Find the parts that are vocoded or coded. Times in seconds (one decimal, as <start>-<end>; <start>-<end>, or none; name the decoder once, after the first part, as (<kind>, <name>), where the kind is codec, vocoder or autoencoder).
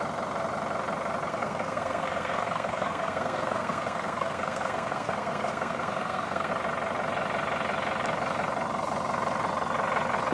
1.3-6.5 (codec, SNAC)